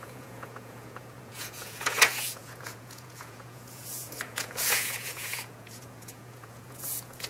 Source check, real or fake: fake